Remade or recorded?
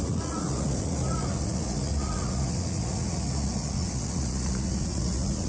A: remade